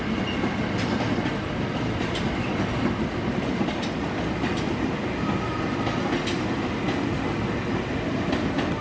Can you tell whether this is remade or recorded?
recorded